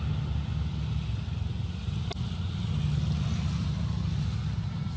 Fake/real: real